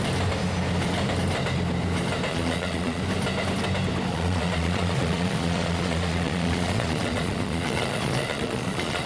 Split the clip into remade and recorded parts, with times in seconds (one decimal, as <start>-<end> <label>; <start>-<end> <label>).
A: 0.0-2.3 recorded; 2.3-3.0 remade; 3.0-4.1 recorded; 4.1-9.1 remade